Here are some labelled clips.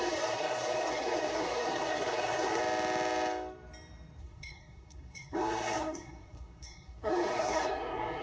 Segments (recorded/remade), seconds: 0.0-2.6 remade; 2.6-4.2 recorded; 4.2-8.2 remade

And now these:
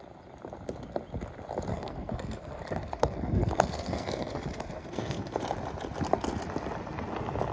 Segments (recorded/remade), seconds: 0.0-1.7 recorded; 1.7-5.4 remade; 5.4-7.5 recorded